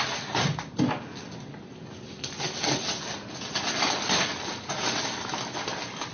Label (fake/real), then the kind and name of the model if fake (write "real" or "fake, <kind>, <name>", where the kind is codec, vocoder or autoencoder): real